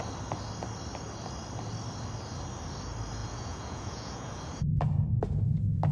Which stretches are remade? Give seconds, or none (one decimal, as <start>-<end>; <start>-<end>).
3.2-4.4